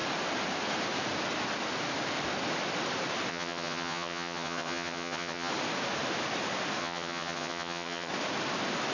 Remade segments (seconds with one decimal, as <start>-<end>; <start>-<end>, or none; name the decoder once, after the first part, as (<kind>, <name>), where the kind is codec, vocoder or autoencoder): 3.3-5.5 (vocoder, HiFi-GAN); 6.8-8.1